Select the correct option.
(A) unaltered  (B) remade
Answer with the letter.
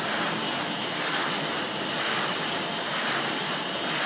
A